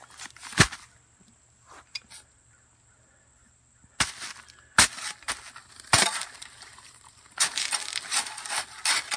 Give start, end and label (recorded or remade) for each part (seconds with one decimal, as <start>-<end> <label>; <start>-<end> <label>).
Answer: 0.0-5.6 recorded; 5.6-7.7 remade; 7.7-9.2 recorded